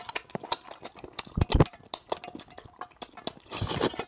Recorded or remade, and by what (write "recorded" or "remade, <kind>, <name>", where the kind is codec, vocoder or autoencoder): recorded